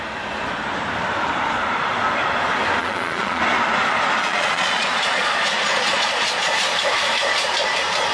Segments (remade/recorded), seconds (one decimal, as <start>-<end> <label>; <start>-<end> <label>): 0.0-2.8 recorded; 2.8-3.4 remade; 3.4-4.2 recorded; 4.2-6.5 remade; 6.5-8.1 recorded